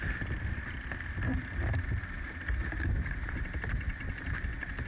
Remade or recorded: recorded